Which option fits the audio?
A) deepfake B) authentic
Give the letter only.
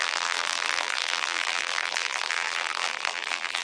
A